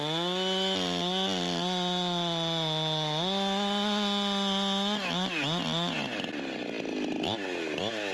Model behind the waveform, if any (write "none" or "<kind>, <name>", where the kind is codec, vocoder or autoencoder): none